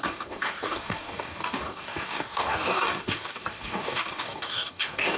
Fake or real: fake